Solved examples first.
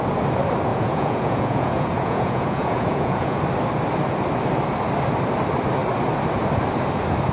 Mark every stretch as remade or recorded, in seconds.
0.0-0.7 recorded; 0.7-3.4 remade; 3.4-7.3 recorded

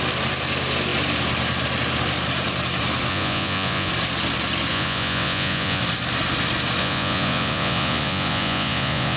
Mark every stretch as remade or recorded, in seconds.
0.0-3.1 recorded; 3.1-3.9 remade; 3.9-4.7 recorded; 4.7-5.8 remade; 5.8-6.8 recorded; 6.8-9.2 remade

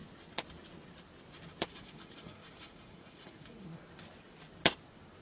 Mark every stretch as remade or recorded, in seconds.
0.0-1.7 recorded; 1.7-3.7 remade; 3.7-5.2 recorded

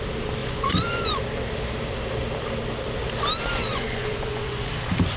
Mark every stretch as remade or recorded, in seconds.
0.0-0.4 recorded; 0.4-1.2 remade; 1.2-3.7 recorded; 3.7-4.7 remade; 4.7-5.2 recorded

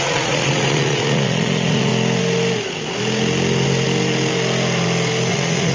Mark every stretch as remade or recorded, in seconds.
0.0-1.9 remade; 1.9-5.3 recorded; 5.3-5.7 remade

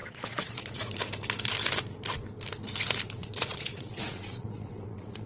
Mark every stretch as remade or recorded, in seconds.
0.0-0.8 remade; 0.8-3.2 recorded; 3.2-5.3 remade